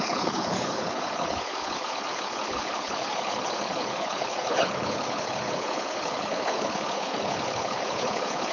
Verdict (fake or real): fake